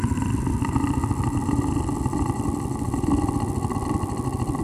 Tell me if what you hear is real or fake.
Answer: real